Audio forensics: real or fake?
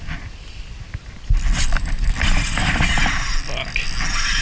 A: real